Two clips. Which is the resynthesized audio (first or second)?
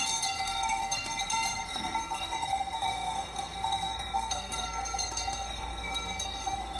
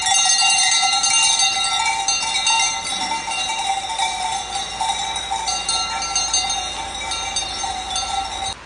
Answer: first